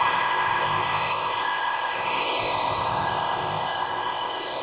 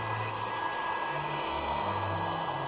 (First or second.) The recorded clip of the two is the second